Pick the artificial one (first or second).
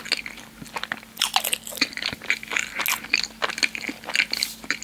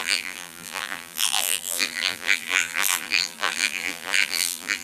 second